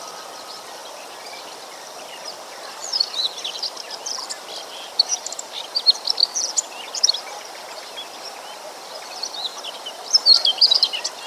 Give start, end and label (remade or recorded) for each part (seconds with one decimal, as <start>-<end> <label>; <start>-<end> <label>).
0.0-11.3 recorded